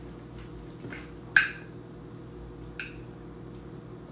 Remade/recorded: recorded